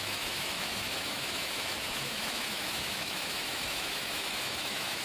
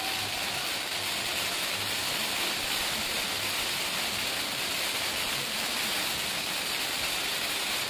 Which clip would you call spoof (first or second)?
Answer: first